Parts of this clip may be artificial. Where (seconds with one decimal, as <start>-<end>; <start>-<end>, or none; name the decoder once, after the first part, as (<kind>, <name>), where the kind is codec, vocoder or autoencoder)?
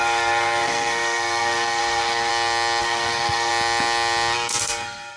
0.0-2.3 (codec, SNAC); 2.8-3.5; 4.6-5.2